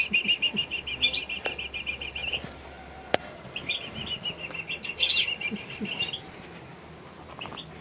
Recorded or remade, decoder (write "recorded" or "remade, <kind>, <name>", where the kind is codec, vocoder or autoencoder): recorded